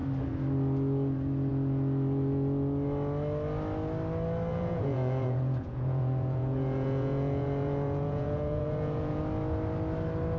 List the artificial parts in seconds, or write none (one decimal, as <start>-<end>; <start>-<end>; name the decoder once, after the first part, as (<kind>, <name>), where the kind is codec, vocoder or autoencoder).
4.5-9.2 (vocoder, Vocos)